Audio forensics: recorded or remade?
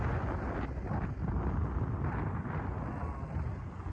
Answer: recorded